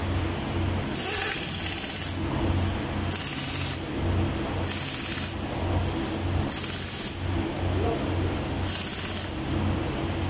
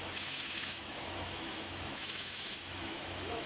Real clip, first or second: first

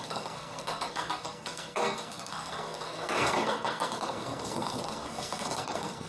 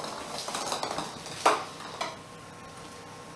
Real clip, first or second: second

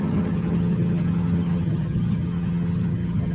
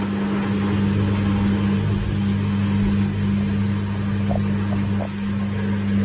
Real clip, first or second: second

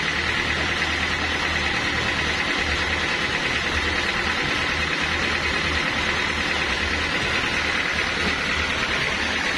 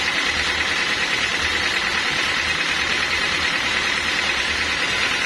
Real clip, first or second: first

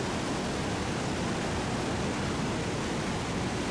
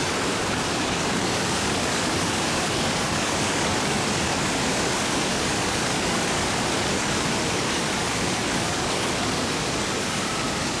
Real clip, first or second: first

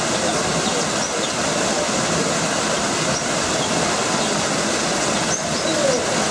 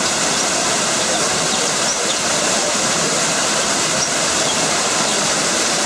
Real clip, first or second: first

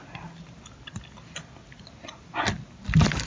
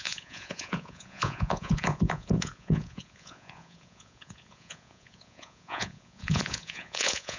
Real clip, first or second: first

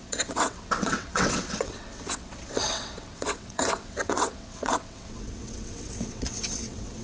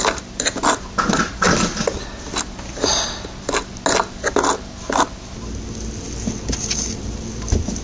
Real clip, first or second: second